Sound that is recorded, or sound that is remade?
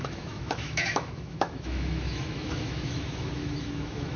remade